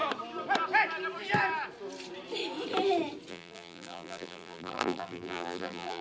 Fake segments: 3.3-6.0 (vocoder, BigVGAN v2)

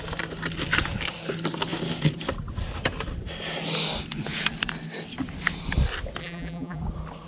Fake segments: 6.2-6.8 (vocoder, BigVGAN v2)

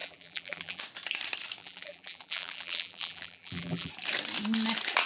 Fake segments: 0.0-0.8 (vocoder, BigVGAN v2); 1.6-3.9

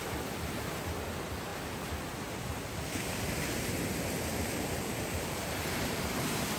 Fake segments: 4.3-6.1 (vocoder, BigVGAN v2)

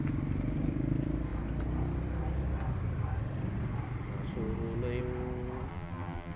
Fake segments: 5.7-6.4 (vocoder, BigVGAN v2)

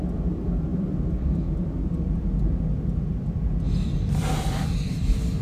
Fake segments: 0.0-5.4 (vocoder, BigVGAN v2)

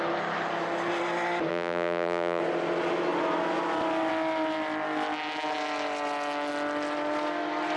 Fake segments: 1.5-2.4 (vocoder, BigVGAN v2)